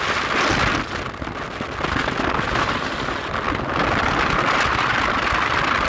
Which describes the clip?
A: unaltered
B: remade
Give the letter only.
A